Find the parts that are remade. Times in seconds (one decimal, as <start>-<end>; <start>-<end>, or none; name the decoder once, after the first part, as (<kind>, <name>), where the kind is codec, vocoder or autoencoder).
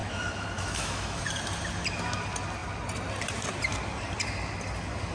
0.0-1.2 (autoencoder, DAC-VAE)